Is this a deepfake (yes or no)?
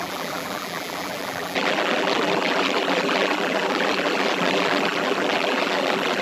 yes